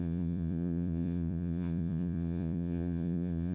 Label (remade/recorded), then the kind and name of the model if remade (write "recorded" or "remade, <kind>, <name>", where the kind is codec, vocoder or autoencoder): remade, vocoder, Vocos